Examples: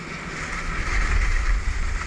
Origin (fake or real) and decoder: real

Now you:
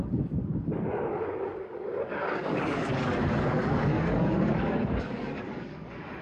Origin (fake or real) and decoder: fake, codec, DAC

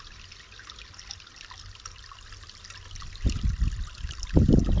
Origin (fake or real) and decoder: real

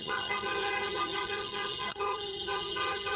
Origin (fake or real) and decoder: fake, vocoder, HiFi-GAN